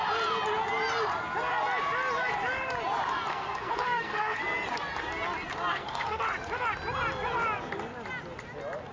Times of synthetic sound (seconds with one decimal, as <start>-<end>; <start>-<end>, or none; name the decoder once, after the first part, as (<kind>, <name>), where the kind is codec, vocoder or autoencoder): 3.3-4.4 (codec, SNAC); 5.7-6.2